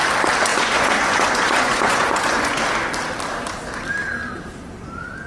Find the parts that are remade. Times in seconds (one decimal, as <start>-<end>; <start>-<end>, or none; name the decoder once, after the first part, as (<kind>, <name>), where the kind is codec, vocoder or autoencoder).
0.5-2.6 (vocoder, Vocos)

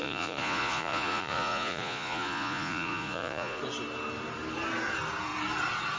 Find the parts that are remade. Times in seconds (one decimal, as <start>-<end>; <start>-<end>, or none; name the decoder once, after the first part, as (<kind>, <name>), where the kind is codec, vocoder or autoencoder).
0.0-3.6 (vocoder, Vocos)